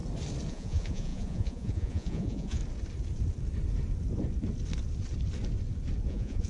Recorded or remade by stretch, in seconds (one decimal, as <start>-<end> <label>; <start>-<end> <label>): 0.0-0.5 recorded; 0.5-2.6 remade; 2.6-6.1 recorded; 6.1-6.5 remade